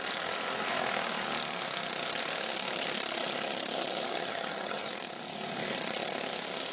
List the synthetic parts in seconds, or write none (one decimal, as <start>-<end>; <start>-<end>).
4.1-4.9